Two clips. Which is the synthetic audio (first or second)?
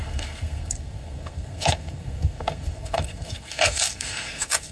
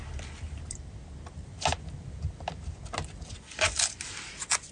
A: first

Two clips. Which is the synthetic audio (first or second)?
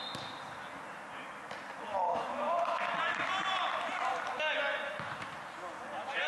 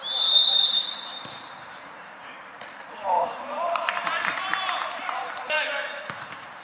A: second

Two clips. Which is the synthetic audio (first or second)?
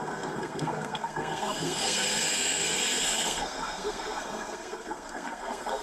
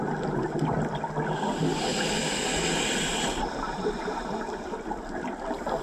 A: first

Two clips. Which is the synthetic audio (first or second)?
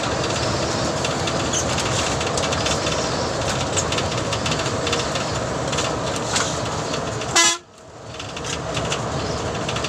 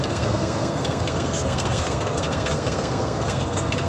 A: second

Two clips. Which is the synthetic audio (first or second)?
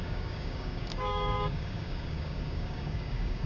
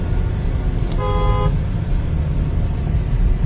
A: first